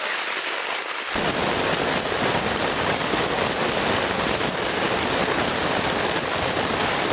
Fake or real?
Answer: real